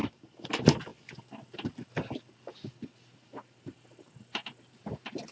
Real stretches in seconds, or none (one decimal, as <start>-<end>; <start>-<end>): 0.0-5.3